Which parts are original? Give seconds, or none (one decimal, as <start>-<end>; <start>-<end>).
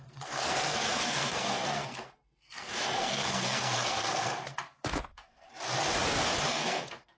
5.5-6.5